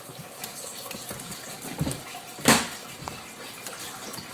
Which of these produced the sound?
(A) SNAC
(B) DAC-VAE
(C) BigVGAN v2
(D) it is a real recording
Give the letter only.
D